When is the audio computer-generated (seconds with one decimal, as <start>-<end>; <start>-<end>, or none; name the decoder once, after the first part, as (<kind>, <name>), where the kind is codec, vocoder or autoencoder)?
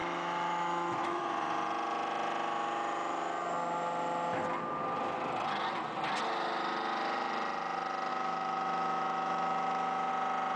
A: 0.0-1.2 (autoencoder, DAC-VAE); 8.1-10.1